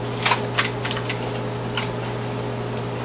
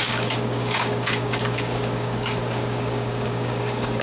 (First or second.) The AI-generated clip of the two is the second